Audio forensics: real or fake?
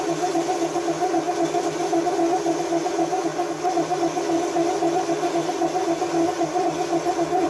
real